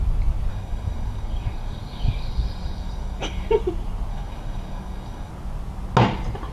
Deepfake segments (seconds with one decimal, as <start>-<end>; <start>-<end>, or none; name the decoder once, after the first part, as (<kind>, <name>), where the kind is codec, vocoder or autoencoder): 0.5-3.6 (codec, DAC); 4.1-5.3